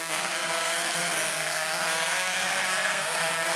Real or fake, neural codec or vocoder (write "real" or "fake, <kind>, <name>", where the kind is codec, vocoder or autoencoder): fake, codec, SNAC